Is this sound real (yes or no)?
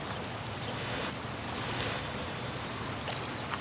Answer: yes